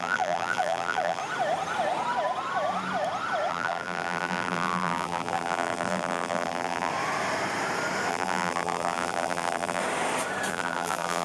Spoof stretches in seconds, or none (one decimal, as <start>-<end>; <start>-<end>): 0.0-1.2; 3.5-6.9; 8.1-9.8; 10.5-11.2